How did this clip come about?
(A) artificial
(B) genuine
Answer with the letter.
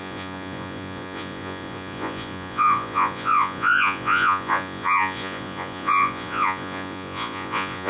A